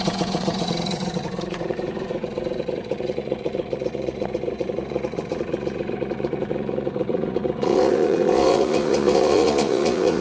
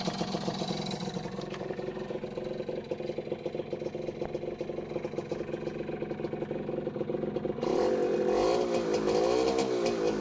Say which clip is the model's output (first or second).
first